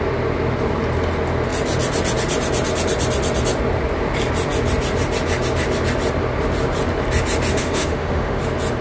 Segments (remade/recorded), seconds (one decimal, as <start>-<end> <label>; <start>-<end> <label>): 0.0-7.5 recorded; 7.5-8.4 remade; 8.4-8.8 recorded

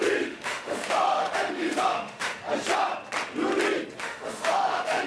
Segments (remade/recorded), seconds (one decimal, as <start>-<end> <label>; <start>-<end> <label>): 0.0-2.4 remade; 2.4-4.0 recorded; 4.0-5.1 remade